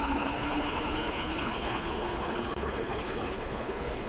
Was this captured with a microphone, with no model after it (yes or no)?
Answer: no